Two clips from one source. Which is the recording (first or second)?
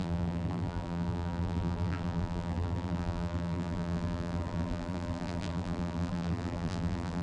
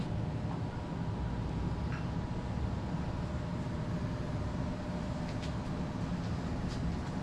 second